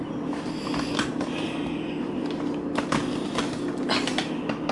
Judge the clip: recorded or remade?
recorded